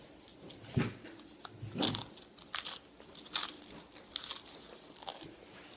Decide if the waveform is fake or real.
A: real